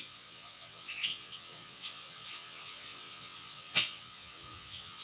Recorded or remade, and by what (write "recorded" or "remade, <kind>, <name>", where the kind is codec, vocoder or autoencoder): remade, vocoder, WaveNeXt